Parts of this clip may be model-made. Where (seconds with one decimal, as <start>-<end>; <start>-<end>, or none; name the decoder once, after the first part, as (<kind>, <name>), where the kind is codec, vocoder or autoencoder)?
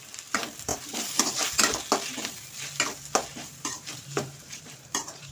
0.7-1.5 (vocoder, BigVGAN v2); 3.3-5.3